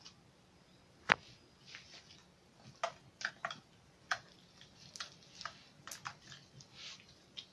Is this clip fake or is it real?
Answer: real